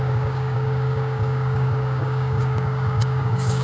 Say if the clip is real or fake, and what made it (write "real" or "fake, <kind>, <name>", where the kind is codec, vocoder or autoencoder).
fake, codec, DAC